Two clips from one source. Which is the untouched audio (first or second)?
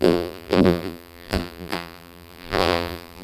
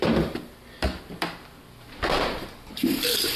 second